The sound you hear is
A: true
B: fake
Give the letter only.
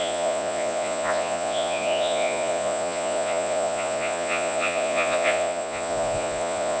B